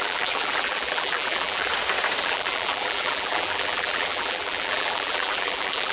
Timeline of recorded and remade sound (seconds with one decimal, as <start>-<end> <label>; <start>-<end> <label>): 0.0-1.7 remade; 1.7-2.2 recorded; 2.2-5.9 remade

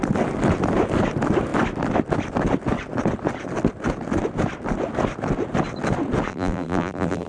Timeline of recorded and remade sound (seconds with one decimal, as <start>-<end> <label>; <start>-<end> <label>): 0.0-6.3 recorded; 6.3-7.3 remade

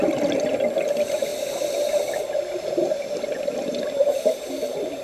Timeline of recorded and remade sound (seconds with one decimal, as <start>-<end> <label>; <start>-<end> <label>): 0.0-4.0 recorded; 4.0-5.0 remade